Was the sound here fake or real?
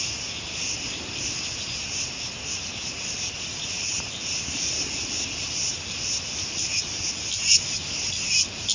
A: real